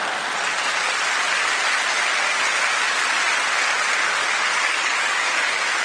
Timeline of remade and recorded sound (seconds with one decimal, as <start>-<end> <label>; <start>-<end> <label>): 0.0-4.5 recorded; 4.5-5.3 remade; 5.3-5.8 recorded